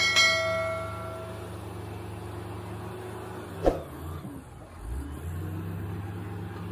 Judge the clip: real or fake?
real